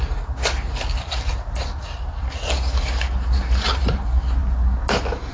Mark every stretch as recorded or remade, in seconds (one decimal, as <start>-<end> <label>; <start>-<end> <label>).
0.0-5.3 recorded